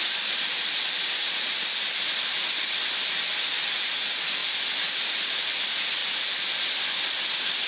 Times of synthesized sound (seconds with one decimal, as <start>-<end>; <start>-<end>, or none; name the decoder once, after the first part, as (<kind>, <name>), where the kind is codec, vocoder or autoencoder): 0.0-4.4 (vocoder, BigVGAN v2); 5.1-6.0; 7.2-7.7